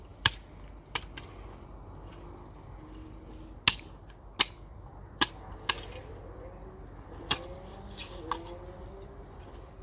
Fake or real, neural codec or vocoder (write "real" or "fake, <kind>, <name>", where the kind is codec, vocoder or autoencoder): real